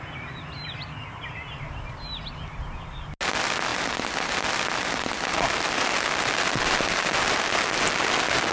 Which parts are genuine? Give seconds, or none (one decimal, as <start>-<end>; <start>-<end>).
0.0-8.5